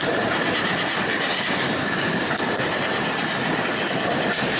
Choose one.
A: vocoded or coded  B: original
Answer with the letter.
B